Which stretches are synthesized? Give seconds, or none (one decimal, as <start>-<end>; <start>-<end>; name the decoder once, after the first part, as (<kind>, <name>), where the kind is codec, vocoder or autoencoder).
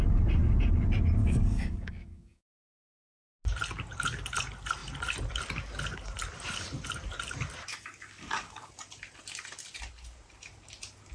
1.2-2.6 (codec, DAC); 7.7-8.7